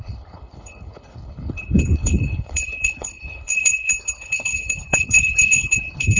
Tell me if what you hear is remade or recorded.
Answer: remade